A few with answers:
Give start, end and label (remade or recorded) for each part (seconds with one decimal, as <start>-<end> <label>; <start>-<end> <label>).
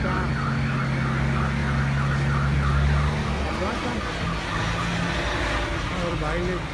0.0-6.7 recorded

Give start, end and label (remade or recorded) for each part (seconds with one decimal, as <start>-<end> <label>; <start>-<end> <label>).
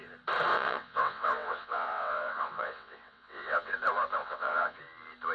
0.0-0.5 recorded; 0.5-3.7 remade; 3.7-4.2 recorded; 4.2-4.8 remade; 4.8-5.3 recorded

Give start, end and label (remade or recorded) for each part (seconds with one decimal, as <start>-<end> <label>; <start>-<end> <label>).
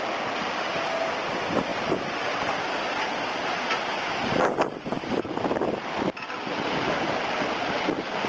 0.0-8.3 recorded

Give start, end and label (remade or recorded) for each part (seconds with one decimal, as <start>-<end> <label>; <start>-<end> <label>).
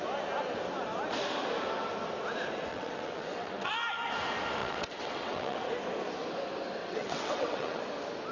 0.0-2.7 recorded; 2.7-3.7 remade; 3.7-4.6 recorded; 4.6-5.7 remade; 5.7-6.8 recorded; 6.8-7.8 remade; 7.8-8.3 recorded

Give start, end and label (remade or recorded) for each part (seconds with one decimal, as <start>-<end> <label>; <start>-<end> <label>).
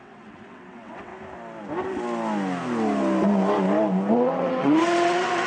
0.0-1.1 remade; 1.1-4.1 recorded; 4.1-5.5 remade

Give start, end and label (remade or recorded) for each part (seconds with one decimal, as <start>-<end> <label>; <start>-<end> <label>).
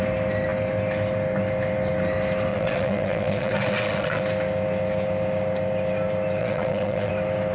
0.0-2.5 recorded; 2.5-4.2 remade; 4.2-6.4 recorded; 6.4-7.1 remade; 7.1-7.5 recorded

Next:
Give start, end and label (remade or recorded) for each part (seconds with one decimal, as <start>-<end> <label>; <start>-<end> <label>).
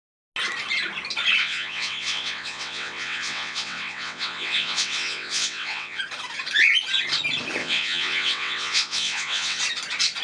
0.0-1.4 recorded; 1.4-6.0 remade; 6.0-7.6 recorded; 7.6-9.6 remade; 9.6-10.2 recorded